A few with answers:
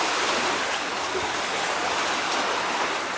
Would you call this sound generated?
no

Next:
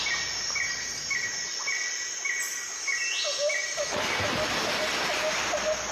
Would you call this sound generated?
no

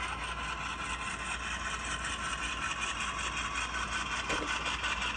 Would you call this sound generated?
no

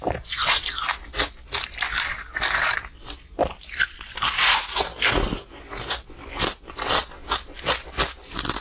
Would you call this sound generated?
no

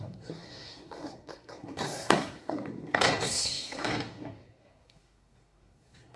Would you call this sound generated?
yes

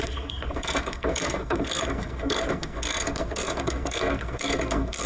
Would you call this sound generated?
yes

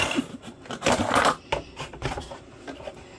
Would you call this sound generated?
no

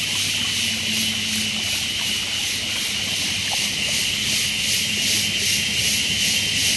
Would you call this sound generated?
no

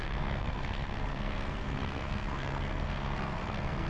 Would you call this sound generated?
yes